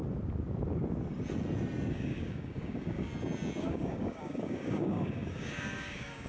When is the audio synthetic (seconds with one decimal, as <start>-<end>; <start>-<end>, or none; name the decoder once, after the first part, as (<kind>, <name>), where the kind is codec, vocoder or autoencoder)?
1.9-3.1 (codec, DAC); 3.6-6.3